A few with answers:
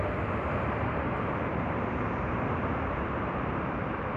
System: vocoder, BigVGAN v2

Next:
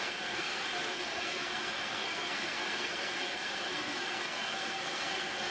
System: codec, SNAC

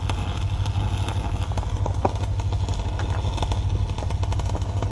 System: none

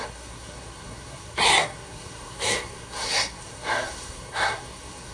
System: codec, SNAC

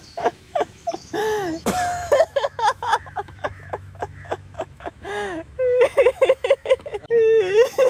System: autoencoder, DAC-VAE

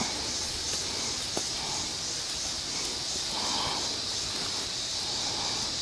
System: none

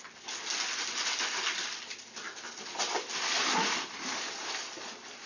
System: none